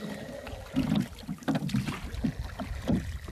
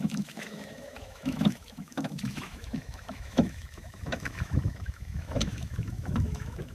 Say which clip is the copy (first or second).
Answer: second